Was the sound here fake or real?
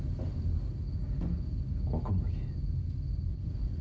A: real